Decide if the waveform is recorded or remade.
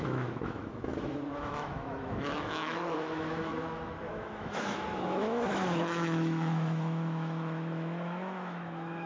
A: remade